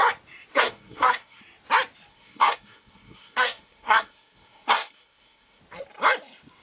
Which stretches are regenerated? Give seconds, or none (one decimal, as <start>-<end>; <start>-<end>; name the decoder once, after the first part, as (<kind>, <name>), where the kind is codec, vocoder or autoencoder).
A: 0.5-1.4 (codec, SNAC); 2.1-5.6